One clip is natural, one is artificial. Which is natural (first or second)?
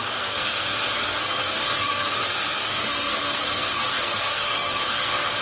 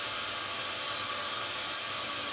second